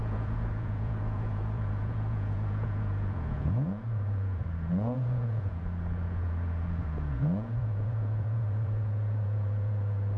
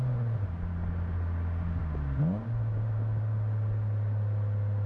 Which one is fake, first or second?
first